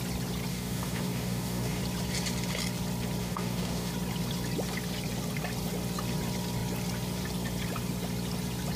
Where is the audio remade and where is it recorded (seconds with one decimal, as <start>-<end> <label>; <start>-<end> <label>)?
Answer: 0.0-0.5 recorded; 0.5-1.8 remade; 1.8-3.2 recorded; 3.2-3.9 remade; 3.9-8.8 recorded